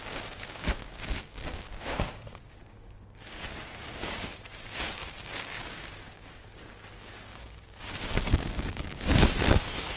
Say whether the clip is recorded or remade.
remade